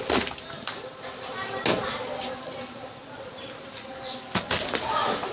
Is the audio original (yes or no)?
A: yes